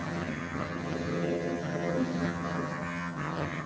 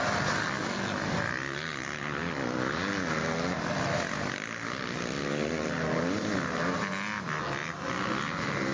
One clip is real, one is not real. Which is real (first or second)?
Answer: second